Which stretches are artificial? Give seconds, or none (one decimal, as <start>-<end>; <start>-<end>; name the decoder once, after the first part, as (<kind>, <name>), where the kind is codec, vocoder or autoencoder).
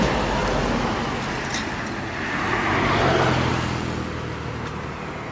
none